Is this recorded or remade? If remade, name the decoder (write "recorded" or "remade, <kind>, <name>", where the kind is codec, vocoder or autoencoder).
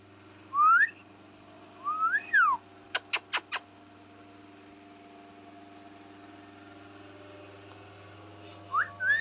recorded